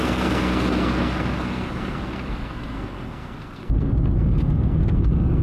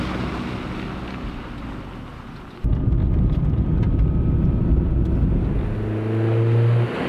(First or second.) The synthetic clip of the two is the first